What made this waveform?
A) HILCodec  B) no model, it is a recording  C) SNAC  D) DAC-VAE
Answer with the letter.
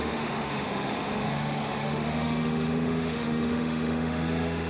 D